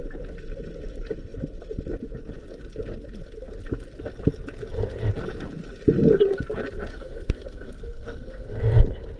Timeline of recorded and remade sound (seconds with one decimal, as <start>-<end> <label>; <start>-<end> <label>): 0.0-6.9 recorded; 6.9-8.6 remade; 8.6-9.2 recorded